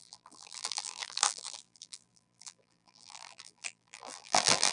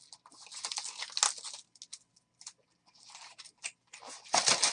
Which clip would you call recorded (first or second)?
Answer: second